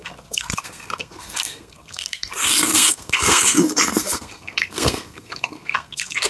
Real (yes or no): no